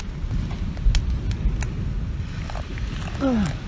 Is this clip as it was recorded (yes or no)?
yes